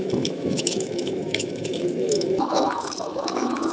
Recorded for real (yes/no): no